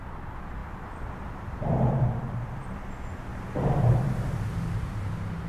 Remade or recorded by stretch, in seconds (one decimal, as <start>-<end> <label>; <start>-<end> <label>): 0.0-0.6 recorded; 0.6-2.8 remade; 2.8-5.5 recorded